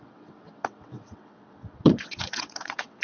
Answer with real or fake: fake